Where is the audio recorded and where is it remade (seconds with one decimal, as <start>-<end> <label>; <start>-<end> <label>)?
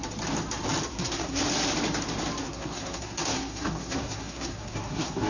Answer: 0.0-0.9 recorded; 0.9-1.4 remade; 1.4-2.4 recorded; 2.4-5.3 remade